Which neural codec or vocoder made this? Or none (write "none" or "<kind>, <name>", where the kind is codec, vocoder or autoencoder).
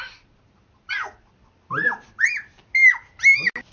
none